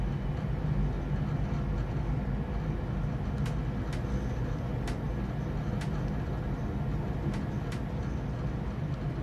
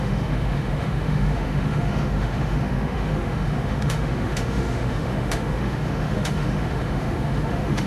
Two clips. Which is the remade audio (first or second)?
second